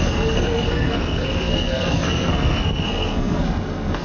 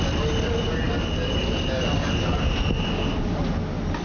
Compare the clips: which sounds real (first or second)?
second